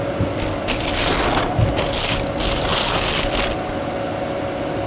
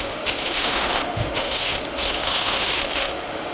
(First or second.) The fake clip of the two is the second